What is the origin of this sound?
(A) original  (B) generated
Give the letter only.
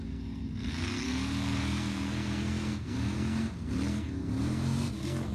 B